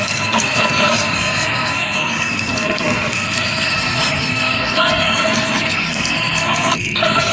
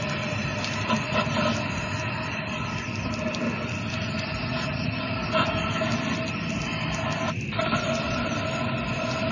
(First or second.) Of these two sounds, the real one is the second